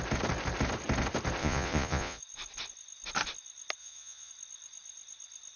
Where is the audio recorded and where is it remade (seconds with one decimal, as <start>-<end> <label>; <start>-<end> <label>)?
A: 0.0-1.4 recorded; 1.4-2.2 remade; 2.2-3.8 recorded; 3.8-4.3 remade; 4.3-5.6 recorded

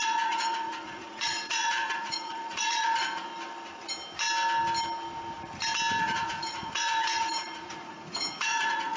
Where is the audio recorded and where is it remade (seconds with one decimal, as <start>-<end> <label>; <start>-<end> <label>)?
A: 0.0-3.3 remade; 3.3-6.0 recorded; 6.0-9.0 remade

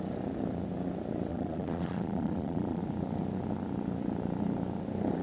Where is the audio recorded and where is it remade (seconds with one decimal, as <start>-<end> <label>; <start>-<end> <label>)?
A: 0.0-1.3 recorded; 1.3-2.8 remade; 2.8-5.2 recorded

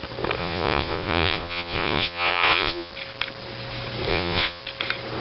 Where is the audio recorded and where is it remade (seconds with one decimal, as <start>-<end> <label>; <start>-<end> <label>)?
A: 0.0-0.4 recorded; 0.4-2.9 remade; 2.9-4.1 recorded; 4.1-4.6 remade; 4.6-5.2 recorded

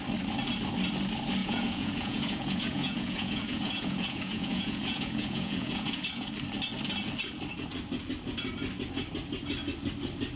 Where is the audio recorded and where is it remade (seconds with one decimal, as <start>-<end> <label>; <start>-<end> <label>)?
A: 0.0-1.4 recorded; 1.4-6.3 remade; 6.3-10.4 recorded

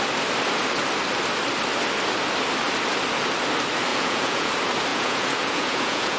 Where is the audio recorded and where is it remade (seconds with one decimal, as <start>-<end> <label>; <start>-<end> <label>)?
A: 0.0-3.9 recorded; 3.9-4.5 remade; 4.5-4.9 recorded; 4.9-6.2 remade